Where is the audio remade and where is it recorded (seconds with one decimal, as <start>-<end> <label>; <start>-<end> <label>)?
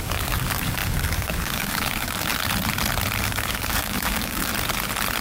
0.0-2.3 remade; 2.3-3.2 recorded; 3.2-4.5 remade; 4.5-5.2 recorded